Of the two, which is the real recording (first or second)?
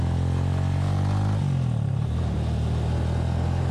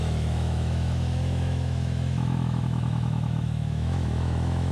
first